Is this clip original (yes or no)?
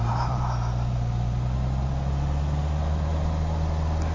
yes